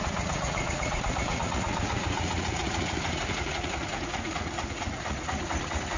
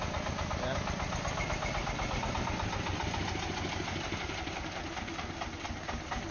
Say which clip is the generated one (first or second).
first